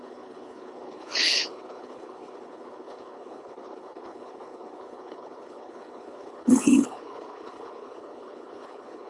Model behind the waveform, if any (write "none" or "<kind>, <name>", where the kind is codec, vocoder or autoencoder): codec, HILCodec